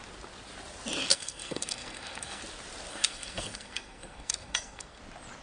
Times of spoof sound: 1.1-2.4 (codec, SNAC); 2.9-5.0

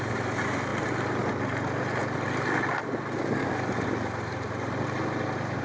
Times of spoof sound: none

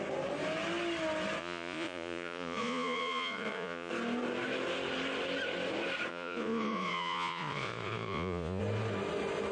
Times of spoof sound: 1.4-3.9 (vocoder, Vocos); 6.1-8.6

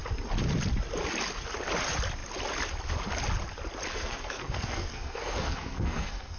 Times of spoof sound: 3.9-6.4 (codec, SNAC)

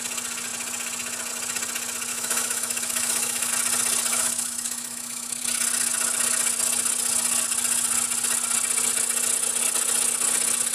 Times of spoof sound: 2.1-3.5 (autoencoder, DAC-VAE); 4.1-5.4

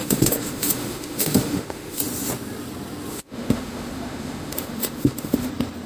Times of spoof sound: 0.0-2.0 (autoencoder, DAC-VAE); 3.1-5.5

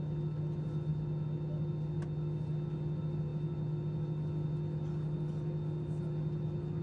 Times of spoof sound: none

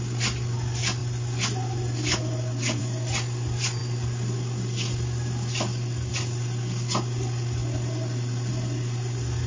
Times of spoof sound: none